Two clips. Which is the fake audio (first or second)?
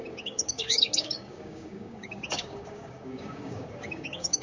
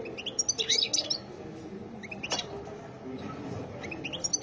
first